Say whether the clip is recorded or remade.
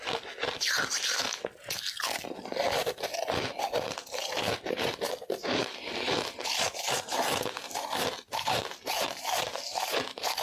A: recorded